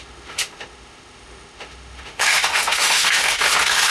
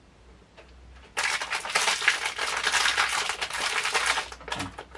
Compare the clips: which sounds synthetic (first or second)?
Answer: first